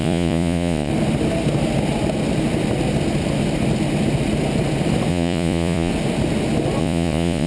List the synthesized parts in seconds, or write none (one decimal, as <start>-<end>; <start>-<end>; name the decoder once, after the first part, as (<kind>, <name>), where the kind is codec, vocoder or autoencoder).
0.0-0.9 (vocoder, Vocos); 5.1-5.9; 6.8-7.5